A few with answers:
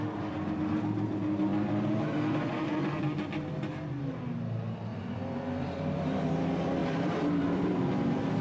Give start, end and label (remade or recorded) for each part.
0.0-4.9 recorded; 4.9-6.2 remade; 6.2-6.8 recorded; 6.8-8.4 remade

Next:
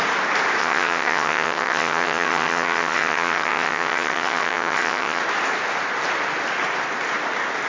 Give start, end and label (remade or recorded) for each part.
0.0-0.6 recorded; 0.6-5.2 remade; 5.2-7.7 recorded